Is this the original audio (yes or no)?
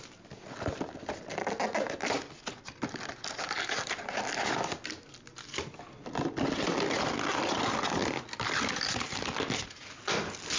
yes